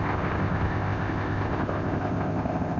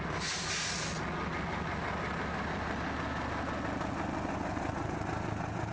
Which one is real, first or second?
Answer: second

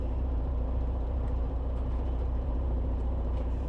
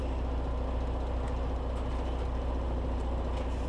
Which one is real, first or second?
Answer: second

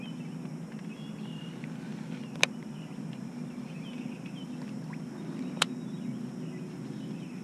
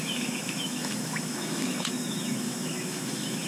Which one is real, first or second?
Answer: first